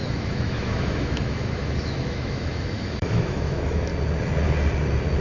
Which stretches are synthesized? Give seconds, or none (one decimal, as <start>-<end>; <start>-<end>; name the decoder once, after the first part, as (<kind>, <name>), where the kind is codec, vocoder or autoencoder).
0.0-3.9 (autoencoder, DAC-VAE)